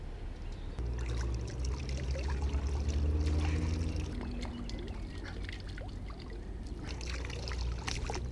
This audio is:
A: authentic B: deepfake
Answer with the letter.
A